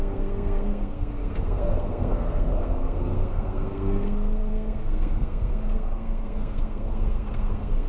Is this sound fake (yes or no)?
yes